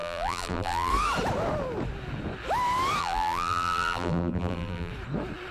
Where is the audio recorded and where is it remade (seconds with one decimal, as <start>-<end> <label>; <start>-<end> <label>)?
0.0-0.9 remade; 0.9-3.0 recorded; 3.0-4.9 remade; 4.9-5.5 recorded